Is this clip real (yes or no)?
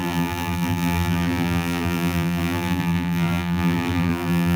no